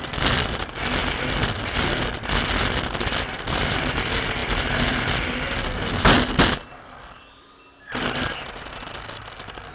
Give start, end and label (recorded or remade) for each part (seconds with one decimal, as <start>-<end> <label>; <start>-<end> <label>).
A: 0.0-9.7 recorded